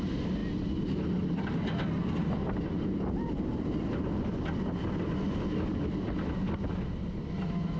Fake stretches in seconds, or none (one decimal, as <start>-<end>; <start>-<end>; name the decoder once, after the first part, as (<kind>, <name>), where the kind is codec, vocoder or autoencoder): none